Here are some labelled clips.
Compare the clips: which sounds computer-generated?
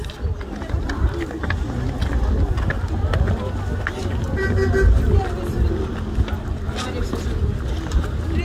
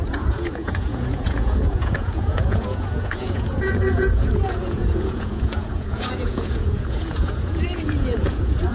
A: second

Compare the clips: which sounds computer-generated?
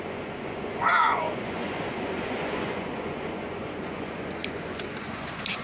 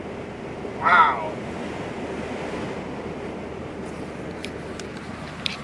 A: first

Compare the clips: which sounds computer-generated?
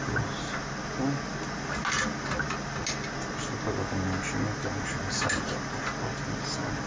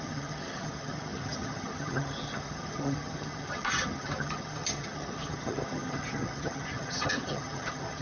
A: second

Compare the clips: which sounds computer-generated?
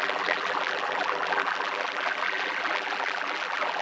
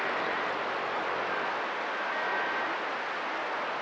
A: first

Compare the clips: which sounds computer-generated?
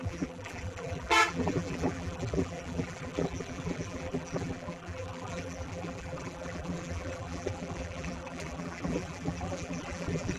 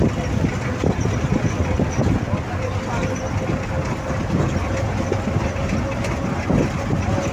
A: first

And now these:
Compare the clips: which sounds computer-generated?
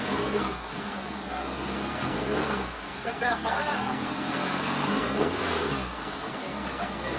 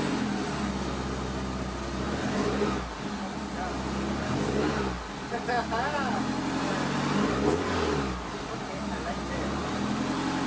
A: first